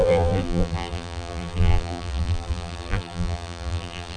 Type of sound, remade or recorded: remade